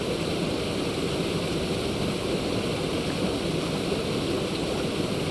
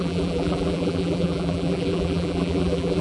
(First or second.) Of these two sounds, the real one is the first